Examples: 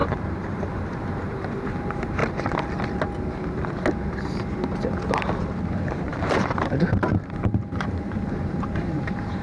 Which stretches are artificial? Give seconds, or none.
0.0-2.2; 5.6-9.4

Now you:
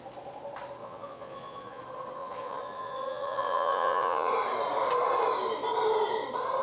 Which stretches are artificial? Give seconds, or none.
0.8-1.8; 2.2-4.3